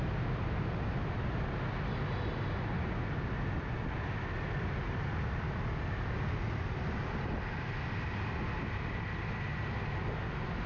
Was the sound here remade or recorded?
recorded